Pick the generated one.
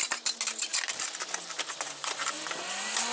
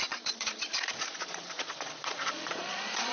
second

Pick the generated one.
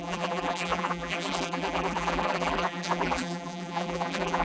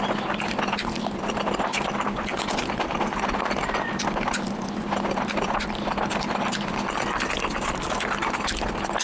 first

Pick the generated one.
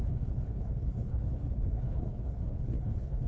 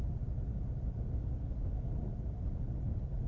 first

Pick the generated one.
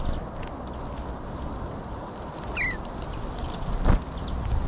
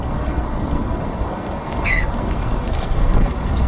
second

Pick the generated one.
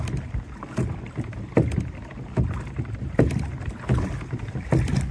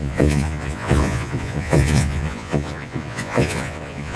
second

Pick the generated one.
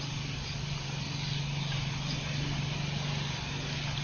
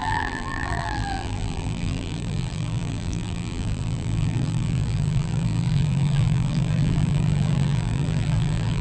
second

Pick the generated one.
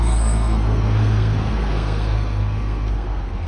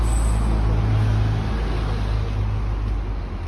first